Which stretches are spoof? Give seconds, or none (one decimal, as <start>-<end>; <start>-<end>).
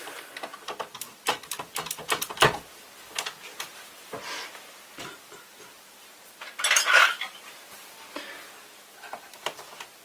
1.1-1.8